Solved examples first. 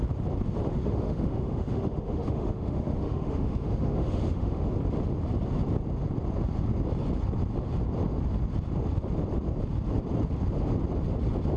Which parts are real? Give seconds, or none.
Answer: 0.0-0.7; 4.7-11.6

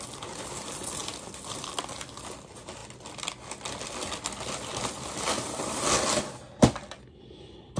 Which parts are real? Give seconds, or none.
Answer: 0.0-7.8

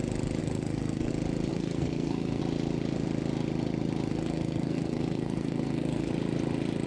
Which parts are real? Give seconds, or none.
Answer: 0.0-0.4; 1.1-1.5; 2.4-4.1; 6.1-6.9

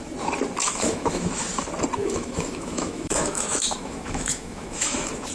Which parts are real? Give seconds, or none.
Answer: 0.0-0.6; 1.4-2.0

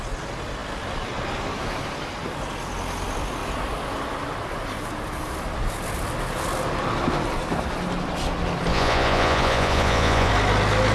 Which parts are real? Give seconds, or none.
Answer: 0.0-8.7; 10.3-10.9

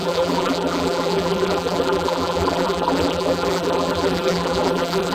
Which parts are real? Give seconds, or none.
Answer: none

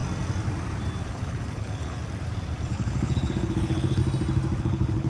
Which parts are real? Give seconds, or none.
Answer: 0.0-1.1; 2.0-2.7; 4.0-4.6